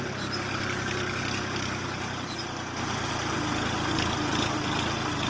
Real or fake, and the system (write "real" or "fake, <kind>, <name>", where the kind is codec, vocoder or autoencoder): real